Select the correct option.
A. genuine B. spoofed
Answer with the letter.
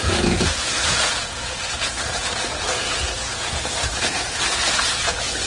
B